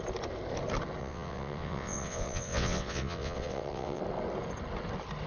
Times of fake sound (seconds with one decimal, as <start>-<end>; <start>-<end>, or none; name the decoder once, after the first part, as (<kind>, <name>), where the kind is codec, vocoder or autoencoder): 1.0-4.0 (vocoder, WaveNeXt)